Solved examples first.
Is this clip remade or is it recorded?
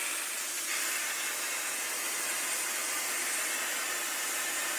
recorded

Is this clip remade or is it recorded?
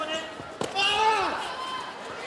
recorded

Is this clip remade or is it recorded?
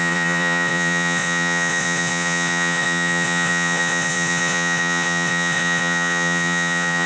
remade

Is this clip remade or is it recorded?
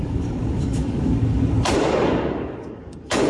remade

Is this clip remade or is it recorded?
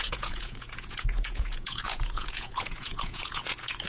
remade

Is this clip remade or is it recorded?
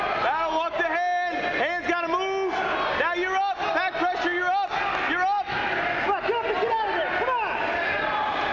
recorded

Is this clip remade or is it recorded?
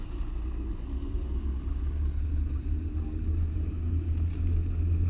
recorded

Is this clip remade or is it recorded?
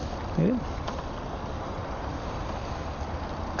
recorded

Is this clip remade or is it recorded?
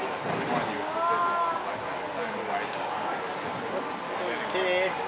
recorded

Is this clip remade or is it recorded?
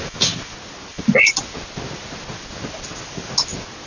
recorded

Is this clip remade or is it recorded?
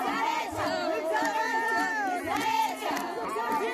recorded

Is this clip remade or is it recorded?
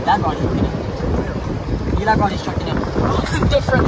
recorded